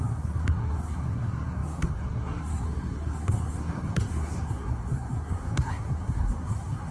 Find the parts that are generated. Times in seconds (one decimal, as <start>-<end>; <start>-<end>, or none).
0.0-6.9

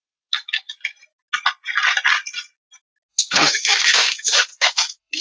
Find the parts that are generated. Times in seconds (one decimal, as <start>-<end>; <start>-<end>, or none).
3.1-5.2

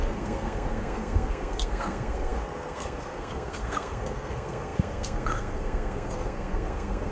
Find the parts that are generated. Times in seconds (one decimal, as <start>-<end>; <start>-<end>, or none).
0.0-7.1

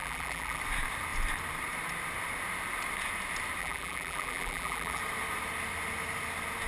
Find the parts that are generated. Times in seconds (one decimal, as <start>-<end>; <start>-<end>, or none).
0.0-0.6; 3.6-5.0

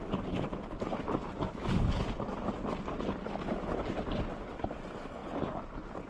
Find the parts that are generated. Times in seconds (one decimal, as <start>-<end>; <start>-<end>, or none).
none

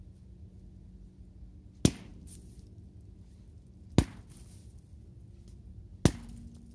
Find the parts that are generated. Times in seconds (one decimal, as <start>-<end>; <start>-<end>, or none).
none

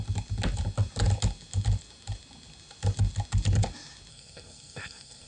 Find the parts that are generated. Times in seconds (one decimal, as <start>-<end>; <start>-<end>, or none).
4.1-5.3